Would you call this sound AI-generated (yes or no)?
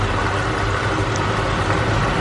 no